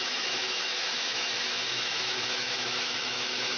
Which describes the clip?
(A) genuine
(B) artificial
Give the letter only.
B